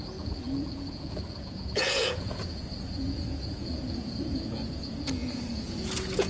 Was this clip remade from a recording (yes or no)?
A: yes